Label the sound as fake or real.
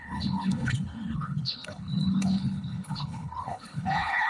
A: fake